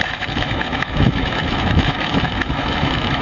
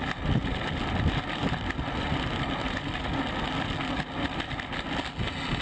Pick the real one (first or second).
second